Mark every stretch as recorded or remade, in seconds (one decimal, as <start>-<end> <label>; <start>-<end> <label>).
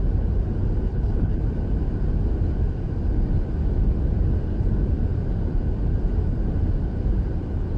0.0-0.9 recorded; 0.9-1.4 remade; 1.4-7.8 recorded